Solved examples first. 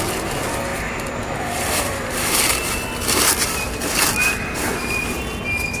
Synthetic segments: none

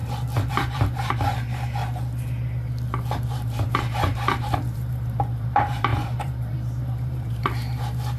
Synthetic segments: 0.5-1.8 (vocoder, BigVGAN v2); 3.3-8.2

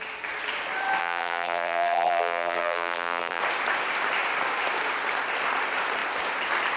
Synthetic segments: 1.0-3.4 (vocoder, BigVGAN v2)